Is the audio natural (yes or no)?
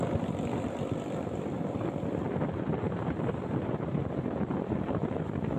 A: yes